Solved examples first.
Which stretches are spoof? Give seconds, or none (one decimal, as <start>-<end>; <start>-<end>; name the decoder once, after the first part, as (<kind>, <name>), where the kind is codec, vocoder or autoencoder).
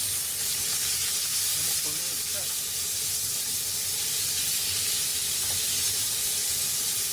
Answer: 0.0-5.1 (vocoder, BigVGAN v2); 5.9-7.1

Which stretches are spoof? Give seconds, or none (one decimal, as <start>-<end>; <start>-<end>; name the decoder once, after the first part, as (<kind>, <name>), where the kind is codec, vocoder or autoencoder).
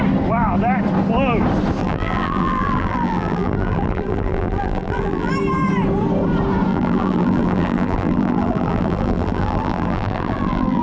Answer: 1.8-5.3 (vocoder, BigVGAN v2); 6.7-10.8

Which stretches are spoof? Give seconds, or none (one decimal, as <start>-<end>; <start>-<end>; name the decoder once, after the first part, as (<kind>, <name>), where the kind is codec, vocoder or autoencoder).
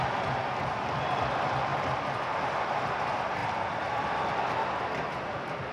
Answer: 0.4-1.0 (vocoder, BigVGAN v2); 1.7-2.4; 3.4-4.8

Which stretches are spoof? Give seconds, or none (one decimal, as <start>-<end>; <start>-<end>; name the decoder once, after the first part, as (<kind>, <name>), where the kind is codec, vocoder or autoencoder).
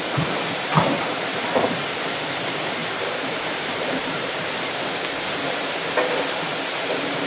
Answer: 0.7-2.2 (vocoder, BigVGAN v2); 2.8-7.3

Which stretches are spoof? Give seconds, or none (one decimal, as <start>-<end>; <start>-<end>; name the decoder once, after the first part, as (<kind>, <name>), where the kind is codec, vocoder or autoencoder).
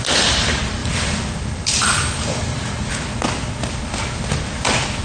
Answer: 0.0-5.0 (vocoder, BigVGAN v2)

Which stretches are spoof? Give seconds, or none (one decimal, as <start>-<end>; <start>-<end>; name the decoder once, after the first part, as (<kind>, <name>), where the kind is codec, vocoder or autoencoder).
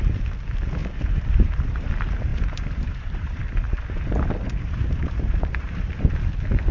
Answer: 0.8-1.9 (vocoder, BigVGAN v2); 2.3-6.1